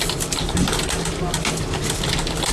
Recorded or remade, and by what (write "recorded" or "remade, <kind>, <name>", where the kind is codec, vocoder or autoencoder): recorded